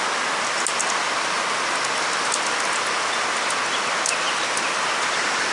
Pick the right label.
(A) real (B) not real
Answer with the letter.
A